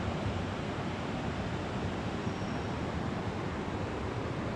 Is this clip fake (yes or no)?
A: yes